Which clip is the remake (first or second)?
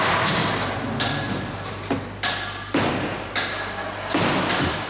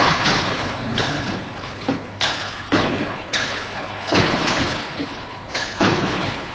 second